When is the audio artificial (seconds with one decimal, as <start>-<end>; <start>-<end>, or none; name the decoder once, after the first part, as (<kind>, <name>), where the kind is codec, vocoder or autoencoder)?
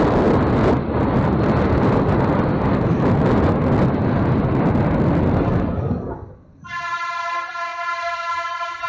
none